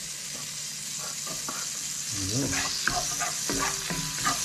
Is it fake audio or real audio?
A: real